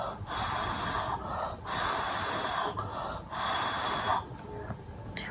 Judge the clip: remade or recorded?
recorded